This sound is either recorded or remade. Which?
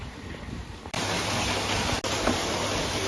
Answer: recorded